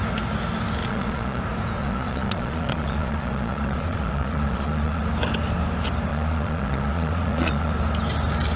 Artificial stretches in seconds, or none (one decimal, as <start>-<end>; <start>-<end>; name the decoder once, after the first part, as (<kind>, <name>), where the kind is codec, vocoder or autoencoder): 0.8-1.4 (vocoder, Vocos); 1.8-5.0; 6.1-7.7